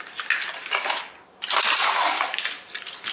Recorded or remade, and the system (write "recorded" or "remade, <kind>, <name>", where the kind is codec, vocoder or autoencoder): recorded